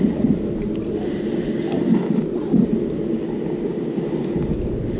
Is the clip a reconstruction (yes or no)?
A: no